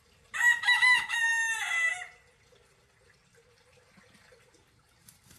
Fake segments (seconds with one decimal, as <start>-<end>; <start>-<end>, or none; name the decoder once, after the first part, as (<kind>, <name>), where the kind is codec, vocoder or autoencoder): 0.5-1.3 (autoencoder, DAC-VAE)

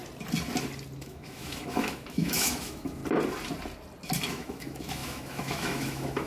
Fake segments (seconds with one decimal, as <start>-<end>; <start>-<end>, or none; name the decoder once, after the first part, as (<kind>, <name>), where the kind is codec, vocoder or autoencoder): 1.0-3.0 (autoencoder, DAC-VAE); 4.3-6.3

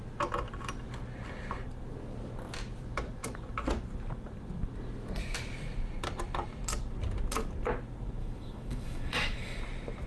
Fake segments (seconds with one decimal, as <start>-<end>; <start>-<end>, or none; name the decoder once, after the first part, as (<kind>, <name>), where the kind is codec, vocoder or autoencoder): 8.2-9.6 (autoencoder, DAC-VAE)

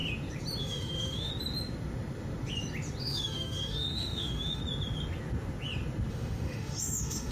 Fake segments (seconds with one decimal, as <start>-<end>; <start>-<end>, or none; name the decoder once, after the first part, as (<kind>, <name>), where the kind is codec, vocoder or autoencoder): 0.6-1.3 (autoencoder, DAC-VAE); 3.0-4.6; 6.1-7.3

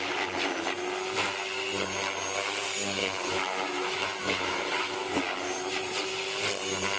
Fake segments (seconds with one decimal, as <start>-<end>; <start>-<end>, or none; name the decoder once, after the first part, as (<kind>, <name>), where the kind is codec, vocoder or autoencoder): 3.0-5.2 (autoencoder, DAC-VAE)